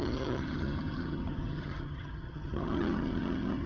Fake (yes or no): yes